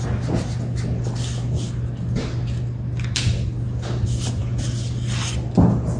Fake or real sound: real